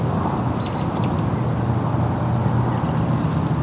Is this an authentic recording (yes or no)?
yes